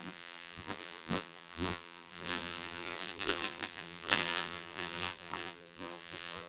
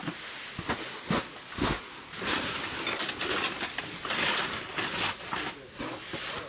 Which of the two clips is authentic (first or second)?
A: second